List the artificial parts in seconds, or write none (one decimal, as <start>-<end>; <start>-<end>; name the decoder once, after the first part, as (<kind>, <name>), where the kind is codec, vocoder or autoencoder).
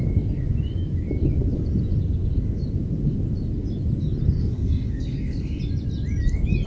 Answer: 4.4-5.6 (codec, SNAC)